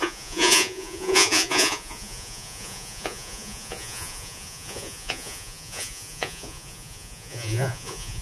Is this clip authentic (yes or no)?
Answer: no